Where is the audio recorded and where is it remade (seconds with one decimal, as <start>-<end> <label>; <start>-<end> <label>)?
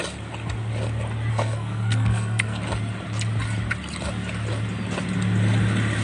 0.0-1.3 recorded; 1.3-2.6 remade; 2.6-6.0 recorded